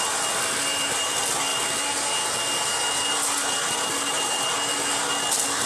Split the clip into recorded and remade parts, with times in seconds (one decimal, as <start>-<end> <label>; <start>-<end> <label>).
0.0-5.7 recorded